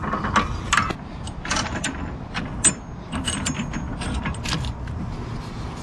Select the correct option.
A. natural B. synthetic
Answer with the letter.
A